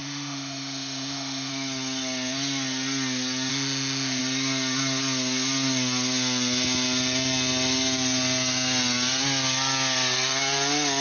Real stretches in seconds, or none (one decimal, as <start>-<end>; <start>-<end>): 1.5-3.5; 4.2-11.0